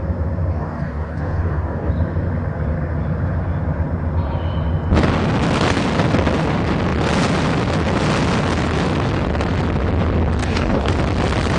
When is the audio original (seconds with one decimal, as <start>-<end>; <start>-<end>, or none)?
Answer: 0.0-0.5; 1.9-10.4; 10.9-11.6